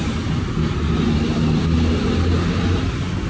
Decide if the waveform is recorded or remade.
recorded